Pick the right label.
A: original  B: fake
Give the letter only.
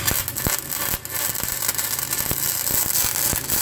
A